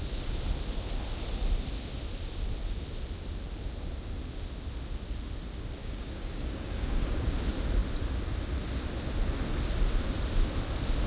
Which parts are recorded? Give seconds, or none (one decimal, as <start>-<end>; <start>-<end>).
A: 0.0-5.8; 7.3-11.1